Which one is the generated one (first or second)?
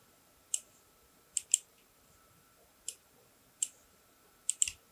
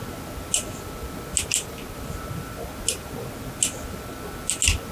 first